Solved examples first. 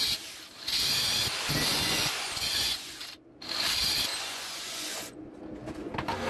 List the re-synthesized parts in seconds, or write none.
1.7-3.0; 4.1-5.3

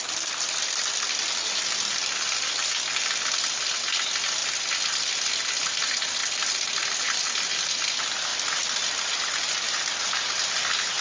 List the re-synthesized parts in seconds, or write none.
none

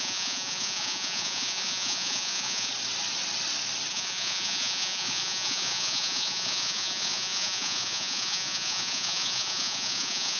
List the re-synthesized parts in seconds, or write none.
0.0-2.7; 3.9-10.4